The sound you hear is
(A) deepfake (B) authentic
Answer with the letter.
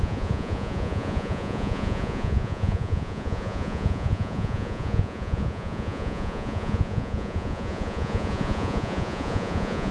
A